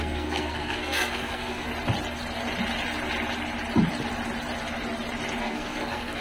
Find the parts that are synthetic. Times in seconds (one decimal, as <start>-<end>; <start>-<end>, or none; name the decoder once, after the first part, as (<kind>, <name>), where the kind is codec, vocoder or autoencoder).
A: 0.0-1.7 (codec, SNAC); 5.4-6.2